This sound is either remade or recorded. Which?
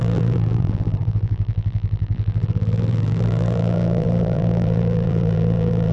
remade